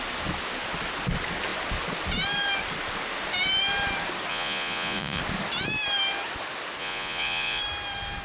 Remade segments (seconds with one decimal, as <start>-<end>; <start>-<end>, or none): 4.3-5.2; 6.8-7.6